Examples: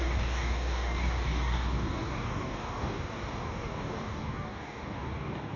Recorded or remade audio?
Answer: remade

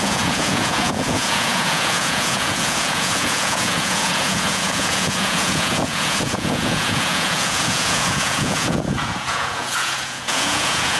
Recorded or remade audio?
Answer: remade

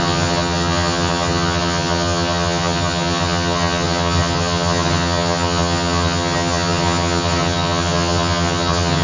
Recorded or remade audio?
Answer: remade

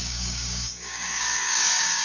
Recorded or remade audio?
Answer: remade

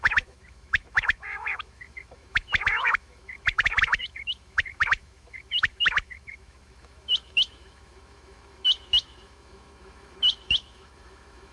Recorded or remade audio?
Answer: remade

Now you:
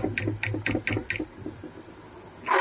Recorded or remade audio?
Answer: recorded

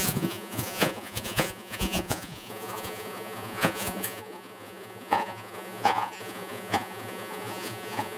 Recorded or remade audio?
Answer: remade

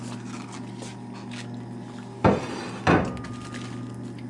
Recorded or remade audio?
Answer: recorded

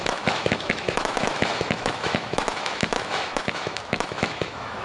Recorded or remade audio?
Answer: remade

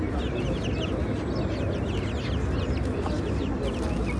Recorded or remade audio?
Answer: recorded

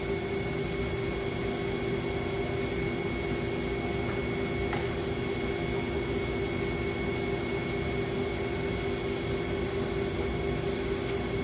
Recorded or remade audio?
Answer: recorded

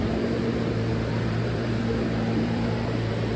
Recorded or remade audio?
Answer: remade